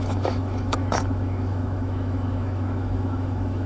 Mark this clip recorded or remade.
remade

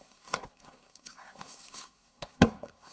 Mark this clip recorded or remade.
remade